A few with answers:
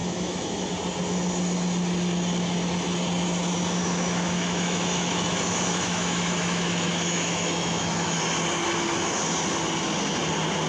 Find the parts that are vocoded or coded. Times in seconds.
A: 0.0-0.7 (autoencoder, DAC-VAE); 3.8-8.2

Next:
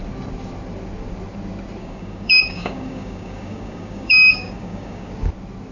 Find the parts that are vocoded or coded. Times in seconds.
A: 1.8-5.1 (codec, DAC)

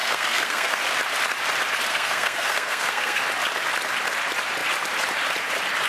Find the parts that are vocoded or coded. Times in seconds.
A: 0.0-0.8 (codec, SNAC); 1.9-3.2

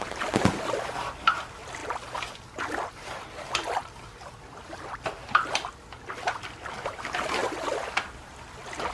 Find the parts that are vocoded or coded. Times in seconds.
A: none